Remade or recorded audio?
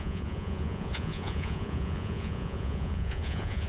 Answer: remade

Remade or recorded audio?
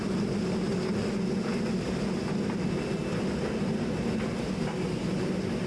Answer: recorded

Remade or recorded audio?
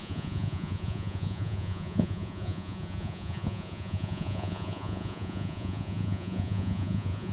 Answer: remade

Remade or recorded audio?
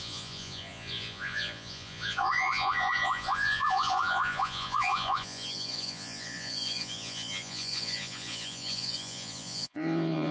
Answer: remade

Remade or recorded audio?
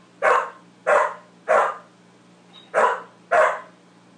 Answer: recorded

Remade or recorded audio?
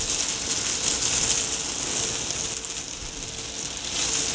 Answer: recorded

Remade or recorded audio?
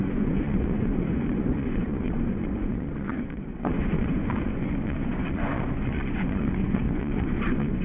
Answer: remade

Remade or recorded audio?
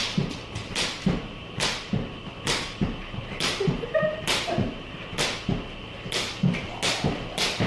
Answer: recorded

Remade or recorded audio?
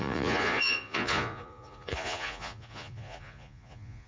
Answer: remade